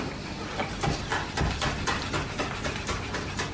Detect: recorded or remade recorded